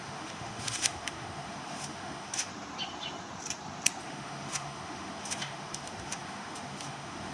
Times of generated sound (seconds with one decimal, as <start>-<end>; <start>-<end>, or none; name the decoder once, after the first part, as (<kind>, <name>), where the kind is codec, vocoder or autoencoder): 0.0-2.5 (autoencoder, DAC-VAE); 4.0-7.3